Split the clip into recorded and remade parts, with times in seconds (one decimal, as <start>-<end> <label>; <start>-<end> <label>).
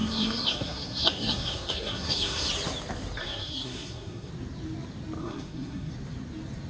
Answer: 0.0-2.5 remade; 2.5-3.2 recorded; 3.2-4.3 remade; 4.3-5.2 recorded; 5.2-5.9 remade; 5.9-6.7 recorded